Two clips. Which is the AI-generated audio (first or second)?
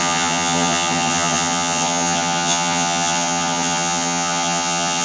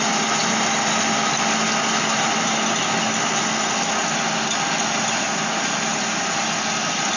first